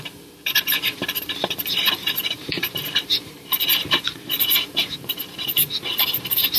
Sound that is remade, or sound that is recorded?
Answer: remade